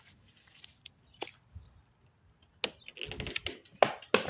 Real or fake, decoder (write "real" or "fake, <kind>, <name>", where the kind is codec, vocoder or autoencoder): real